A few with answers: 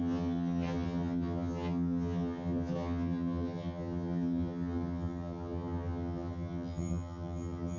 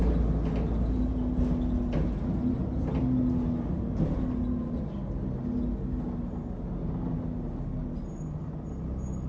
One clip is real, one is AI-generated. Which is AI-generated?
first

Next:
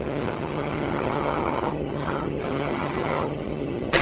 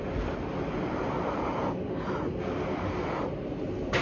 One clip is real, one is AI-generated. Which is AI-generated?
first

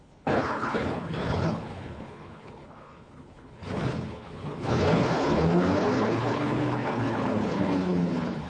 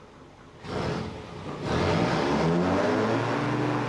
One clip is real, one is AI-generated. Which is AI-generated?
first